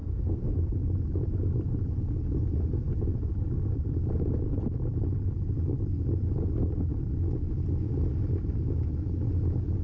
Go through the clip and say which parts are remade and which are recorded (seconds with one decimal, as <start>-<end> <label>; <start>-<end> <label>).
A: 0.0-0.5 remade; 0.5-9.8 recorded